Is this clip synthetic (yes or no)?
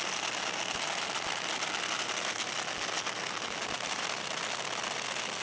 no